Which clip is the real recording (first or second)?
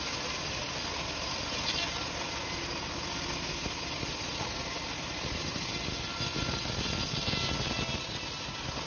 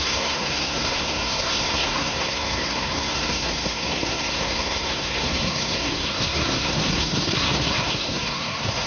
first